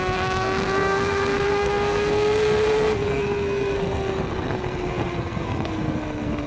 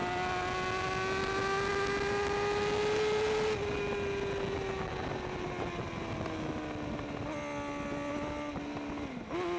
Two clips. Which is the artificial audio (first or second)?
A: first